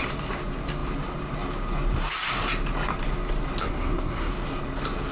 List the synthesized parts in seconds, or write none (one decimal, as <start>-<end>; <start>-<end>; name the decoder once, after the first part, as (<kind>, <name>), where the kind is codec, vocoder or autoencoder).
3.6-4.3 (codec, SNAC)